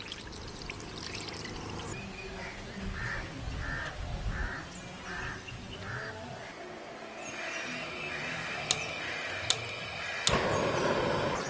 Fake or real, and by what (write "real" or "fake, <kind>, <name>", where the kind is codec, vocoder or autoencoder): real